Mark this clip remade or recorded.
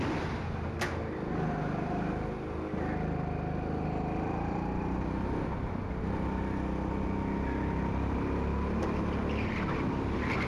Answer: recorded